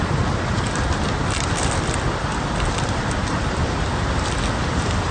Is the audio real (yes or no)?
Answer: yes